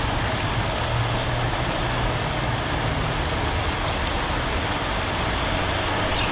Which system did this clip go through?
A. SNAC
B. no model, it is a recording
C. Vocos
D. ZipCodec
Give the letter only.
B